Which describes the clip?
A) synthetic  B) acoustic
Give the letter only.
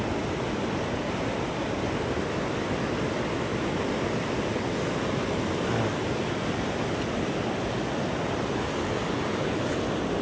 B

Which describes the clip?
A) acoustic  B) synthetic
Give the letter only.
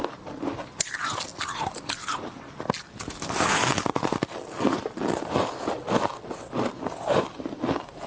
A